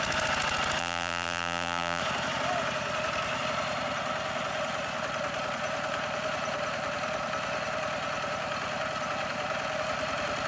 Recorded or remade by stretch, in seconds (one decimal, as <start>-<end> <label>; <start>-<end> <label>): 0.0-0.8 recorded; 0.8-2.0 remade; 2.0-10.5 recorded

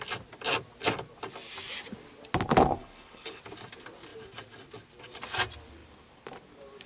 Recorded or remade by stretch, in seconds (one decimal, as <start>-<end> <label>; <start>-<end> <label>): 0.0-2.8 recorded; 2.8-3.4 remade; 3.4-6.9 recorded

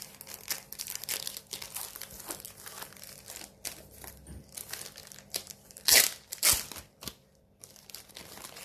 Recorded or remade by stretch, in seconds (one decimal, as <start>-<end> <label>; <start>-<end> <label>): 0.0-5.0 recorded; 5.0-8.0 remade; 8.0-8.6 recorded

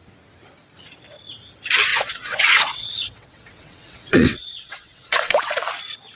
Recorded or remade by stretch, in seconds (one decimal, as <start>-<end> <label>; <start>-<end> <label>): 0.0-1.9 recorded; 1.9-5.6 remade; 5.6-6.2 recorded